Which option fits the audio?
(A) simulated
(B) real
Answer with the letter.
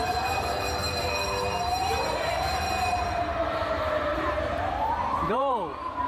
A